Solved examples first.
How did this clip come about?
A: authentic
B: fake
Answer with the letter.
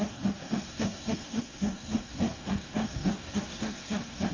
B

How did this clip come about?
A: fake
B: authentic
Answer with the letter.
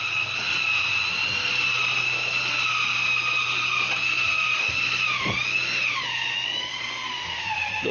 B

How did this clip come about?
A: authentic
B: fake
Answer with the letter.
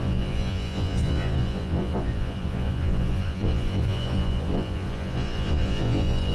B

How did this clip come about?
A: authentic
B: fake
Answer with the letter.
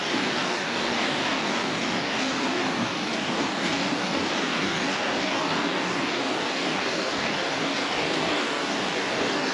B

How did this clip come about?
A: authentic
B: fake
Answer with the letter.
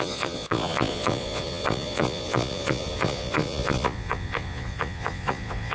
B